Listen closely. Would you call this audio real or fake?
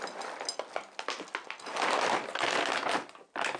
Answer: real